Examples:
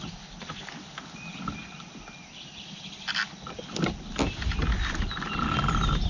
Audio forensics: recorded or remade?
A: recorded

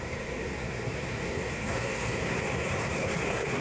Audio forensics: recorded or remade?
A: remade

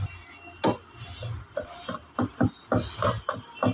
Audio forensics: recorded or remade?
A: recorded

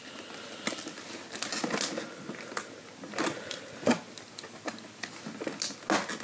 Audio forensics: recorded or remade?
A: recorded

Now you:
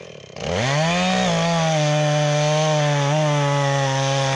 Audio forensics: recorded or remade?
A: recorded